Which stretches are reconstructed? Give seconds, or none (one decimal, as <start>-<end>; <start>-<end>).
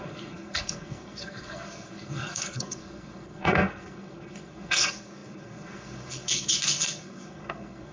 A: 0.0-7.9